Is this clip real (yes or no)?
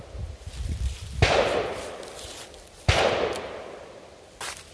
yes